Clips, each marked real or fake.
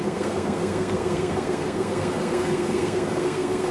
fake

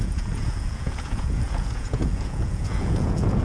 fake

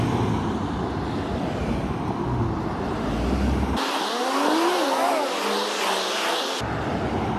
real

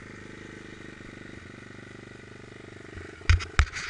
real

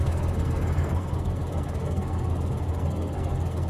fake